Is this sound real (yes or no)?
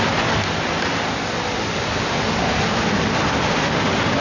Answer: yes